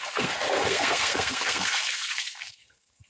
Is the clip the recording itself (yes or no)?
no